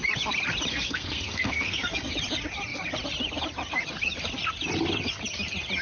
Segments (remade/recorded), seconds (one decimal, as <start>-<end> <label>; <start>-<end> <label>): 0.0-0.7 recorded; 0.7-2.1 remade; 2.1-5.8 recorded